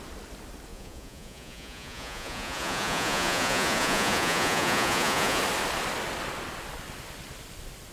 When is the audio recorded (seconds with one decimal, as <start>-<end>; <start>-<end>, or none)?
0.0-0.7; 5.4-7.9